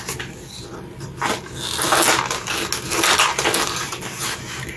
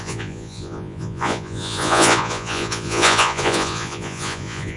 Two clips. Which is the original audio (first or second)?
first